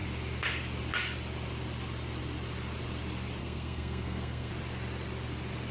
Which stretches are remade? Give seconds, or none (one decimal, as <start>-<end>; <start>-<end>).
3.4-4.5

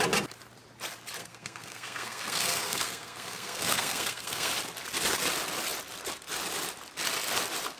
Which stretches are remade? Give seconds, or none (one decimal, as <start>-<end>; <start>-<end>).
1.2-4.5

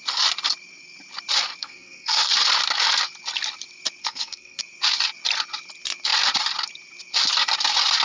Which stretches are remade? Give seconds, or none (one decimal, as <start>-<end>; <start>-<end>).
1.6-2.3; 4.0-4.6

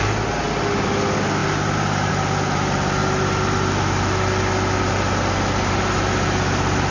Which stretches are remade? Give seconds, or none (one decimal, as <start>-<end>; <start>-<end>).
none

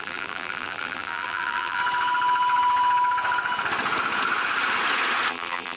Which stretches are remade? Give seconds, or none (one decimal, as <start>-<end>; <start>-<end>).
0.0-1.8; 5.3-5.8